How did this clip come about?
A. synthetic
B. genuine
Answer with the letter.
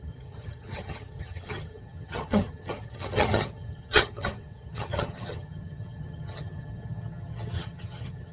A